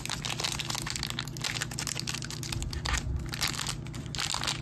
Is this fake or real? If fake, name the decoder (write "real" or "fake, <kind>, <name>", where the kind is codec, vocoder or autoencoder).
real